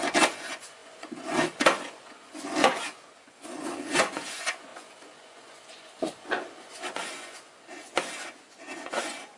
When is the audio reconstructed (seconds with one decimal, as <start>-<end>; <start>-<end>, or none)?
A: 0.0-9.4